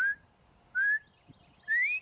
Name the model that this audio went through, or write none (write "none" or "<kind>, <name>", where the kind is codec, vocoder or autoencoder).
none